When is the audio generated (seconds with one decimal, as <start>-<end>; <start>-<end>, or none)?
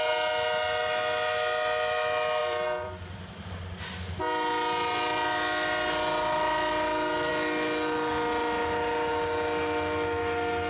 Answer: 2.4-3.5